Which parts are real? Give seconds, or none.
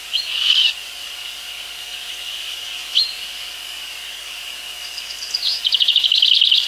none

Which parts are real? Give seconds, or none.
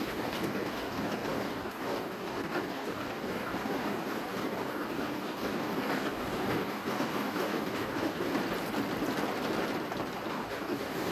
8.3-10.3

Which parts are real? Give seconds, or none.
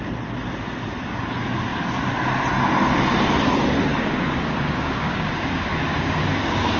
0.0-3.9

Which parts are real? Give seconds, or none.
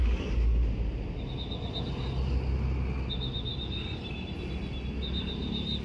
0.7-5.8